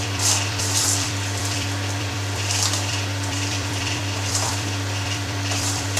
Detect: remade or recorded remade